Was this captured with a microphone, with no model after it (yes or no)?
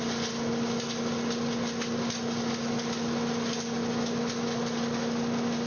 yes